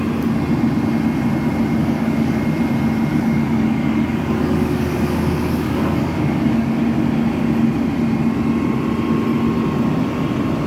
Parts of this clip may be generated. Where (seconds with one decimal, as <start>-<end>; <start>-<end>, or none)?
1.8-2.4; 3.1-6.8